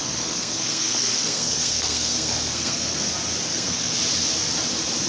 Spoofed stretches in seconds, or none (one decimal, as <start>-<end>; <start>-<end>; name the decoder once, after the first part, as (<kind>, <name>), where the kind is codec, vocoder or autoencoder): 0.0-3.1 (codec, SNAC); 3.5-4.0